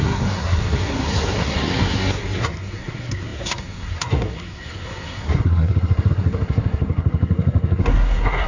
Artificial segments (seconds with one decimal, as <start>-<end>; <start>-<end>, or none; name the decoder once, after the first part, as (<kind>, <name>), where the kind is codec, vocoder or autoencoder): 0.0-8.5 (codec, SNAC)